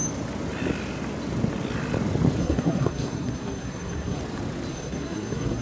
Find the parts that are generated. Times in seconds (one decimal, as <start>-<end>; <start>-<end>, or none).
2.4-4.2; 4.7-5.6